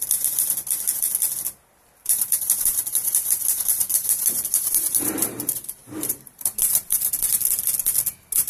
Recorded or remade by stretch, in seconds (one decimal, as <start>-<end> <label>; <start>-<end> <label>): 0.0-2.0 recorded; 2.0-7.1 remade; 7.1-8.5 recorded